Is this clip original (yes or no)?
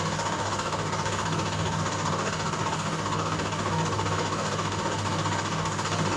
no